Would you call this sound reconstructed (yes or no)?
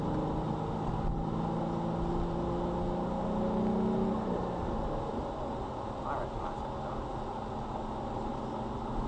no